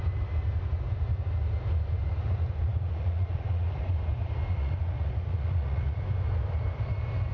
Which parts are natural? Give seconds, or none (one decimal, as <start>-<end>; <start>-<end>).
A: 0.0-2.7; 3.9-4.5; 6.0-7.3